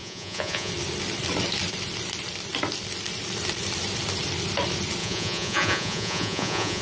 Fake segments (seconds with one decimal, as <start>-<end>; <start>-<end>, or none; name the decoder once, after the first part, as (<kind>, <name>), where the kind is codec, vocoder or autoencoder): 0.0-0.7 (vocoder, Vocos); 5.0-6.8